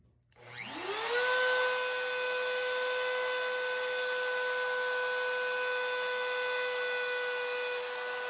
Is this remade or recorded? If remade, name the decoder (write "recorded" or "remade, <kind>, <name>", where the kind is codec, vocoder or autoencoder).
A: recorded